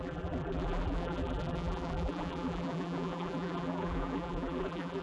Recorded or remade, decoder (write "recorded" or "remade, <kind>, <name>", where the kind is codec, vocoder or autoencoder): remade, vocoder, BigVGAN v2